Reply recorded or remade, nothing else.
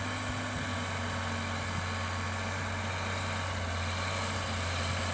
recorded